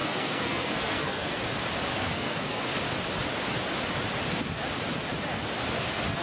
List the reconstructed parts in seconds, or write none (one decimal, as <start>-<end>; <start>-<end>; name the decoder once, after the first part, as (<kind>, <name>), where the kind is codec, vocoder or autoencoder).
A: 0.0-1.4 (codec, SNAC); 1.9-2.6